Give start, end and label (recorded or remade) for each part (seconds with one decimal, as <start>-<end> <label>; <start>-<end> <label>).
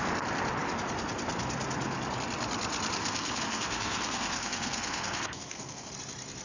0.0-3.0 recorded; 3.0-5.9 remade; 5.9-6.4 recorded